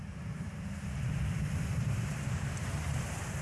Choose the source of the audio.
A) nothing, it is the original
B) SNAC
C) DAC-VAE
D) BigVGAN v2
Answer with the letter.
D